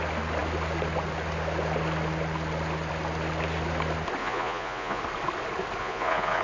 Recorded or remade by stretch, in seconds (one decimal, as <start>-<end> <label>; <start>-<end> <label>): 0.0-4.2 recorded; 4.2-5.0 remade; 5.0-5.8 recorded; 5.8-6.4 remade